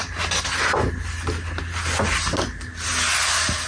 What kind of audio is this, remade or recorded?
recorded